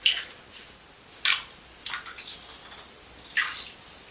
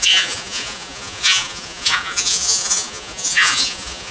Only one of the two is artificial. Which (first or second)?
second